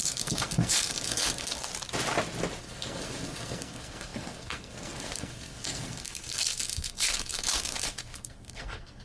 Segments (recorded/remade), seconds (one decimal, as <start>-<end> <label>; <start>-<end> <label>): 0.0-1.7 remade; 1.7-2.6 recorded; 2.6-9.0 remade